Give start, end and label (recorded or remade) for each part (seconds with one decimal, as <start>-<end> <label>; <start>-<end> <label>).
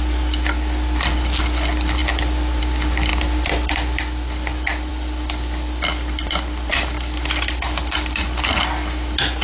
0.0-9.4 recorded